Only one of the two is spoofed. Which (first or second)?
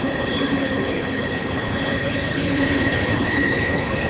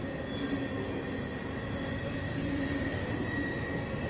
first